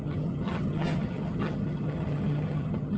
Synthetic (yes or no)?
yes